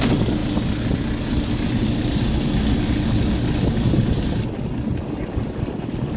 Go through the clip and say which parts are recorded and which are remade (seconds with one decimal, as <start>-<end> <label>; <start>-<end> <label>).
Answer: 0.0-6.2 recorded